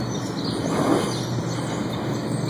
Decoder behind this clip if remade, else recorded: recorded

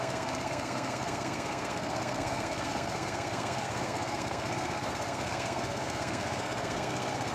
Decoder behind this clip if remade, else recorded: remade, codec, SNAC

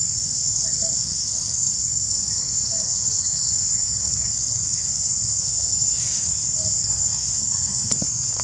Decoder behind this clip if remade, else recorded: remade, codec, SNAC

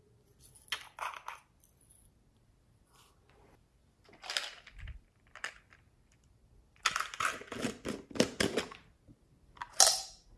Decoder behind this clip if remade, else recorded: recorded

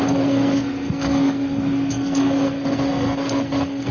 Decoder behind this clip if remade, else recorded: remade, codec, SNAC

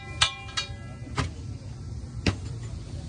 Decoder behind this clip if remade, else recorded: recorded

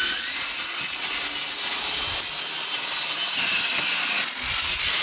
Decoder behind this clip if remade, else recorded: recorded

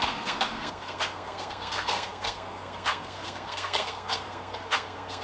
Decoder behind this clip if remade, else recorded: remade, codec, SNAC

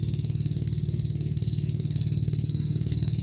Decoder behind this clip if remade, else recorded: remade, codec, SNAC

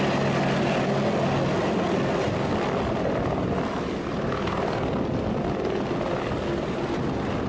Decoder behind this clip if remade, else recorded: recorded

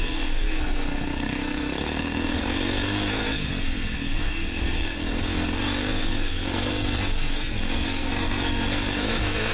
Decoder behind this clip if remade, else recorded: remade, codec, SNAC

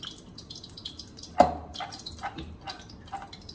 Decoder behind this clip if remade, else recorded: recorded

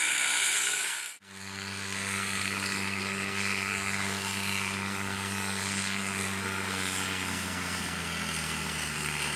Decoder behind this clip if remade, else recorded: remade, codec, SNAC